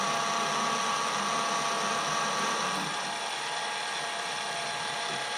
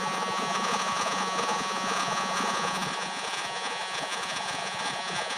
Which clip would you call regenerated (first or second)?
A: second